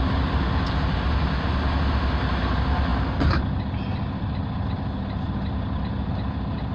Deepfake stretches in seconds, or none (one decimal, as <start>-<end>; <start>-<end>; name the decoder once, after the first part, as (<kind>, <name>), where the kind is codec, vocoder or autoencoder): none